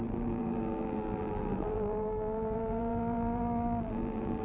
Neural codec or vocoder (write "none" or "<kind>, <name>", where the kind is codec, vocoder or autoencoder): vocoder, BigVGAN v2